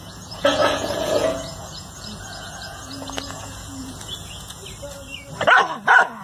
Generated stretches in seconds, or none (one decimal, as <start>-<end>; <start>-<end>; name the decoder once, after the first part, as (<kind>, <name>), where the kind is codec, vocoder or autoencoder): 0.0-4.6 (vocoder, Vocos)